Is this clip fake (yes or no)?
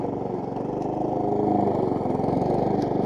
no